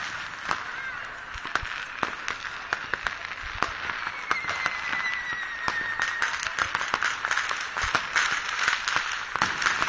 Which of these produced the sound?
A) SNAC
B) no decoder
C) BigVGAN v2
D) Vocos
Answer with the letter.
B